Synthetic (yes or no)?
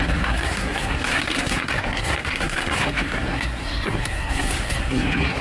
yes